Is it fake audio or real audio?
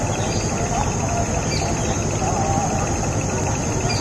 real